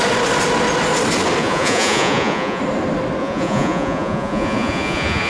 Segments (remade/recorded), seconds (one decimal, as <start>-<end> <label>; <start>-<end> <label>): 0.0-1.4 recorded; 1.4-2.6 remade; 2.6-3.2 recorded; 3.2-5.3 remade